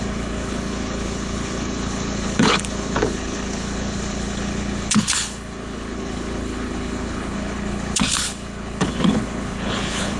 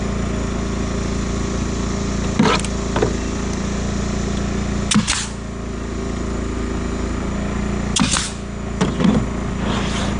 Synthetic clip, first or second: first